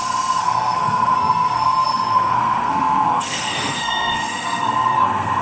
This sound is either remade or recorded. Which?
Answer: remade